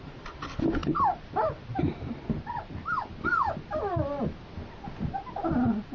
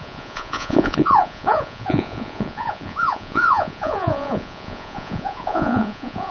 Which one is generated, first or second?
second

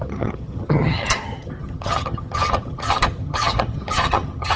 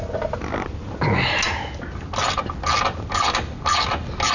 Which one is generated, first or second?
first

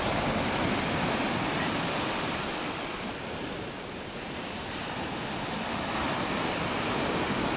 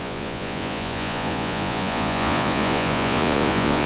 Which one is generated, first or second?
second